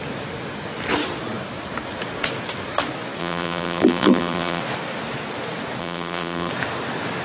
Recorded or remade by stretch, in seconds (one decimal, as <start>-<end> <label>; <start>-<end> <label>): 0.0-3.2 recorded; 3.2-4.6 remade; 4.6-5.8 recorded; 5.8-6.5 remade; 6.5-7.2 recorded